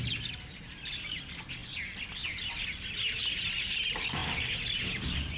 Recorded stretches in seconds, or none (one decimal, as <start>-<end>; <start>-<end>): 0.0-5.4